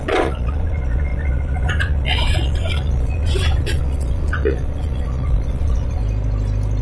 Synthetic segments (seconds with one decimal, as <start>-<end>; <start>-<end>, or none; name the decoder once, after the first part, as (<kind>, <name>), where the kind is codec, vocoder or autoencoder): 0.0-6.0 (vocoder, Vocos)